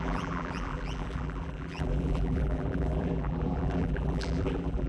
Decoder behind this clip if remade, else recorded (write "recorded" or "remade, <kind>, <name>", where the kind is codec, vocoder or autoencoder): remade, vocoder, BigVGAN v2